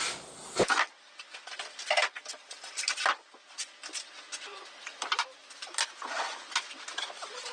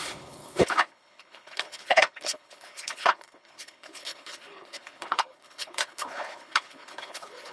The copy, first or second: second